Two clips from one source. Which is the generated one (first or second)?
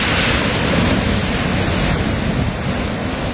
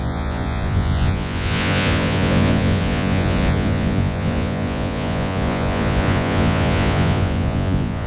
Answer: second